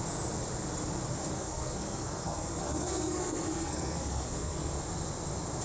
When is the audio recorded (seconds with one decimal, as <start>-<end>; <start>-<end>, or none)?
0.0-1.3; 4.7-5.6